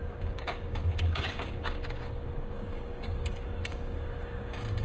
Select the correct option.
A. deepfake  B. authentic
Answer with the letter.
A